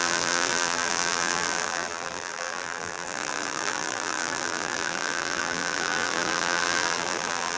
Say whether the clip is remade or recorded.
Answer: remade